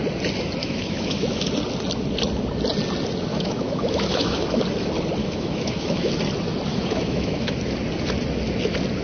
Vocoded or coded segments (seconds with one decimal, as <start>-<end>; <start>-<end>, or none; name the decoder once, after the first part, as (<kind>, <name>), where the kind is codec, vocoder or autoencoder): 0.6-1.4 (autoencoder, DAC-VAE); 3.3-4.6; 5.2-6.1; 6.7-7.5